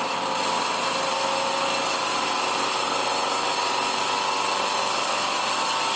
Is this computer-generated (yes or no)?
no